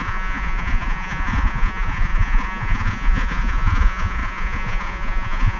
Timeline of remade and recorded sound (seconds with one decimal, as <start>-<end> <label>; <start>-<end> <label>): 0.0-5.6 remade